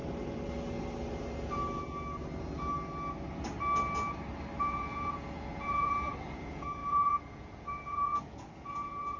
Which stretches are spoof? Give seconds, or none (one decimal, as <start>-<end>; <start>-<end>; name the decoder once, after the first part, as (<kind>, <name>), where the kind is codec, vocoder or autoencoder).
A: 4.6-9.2 (vocoder, Vocos)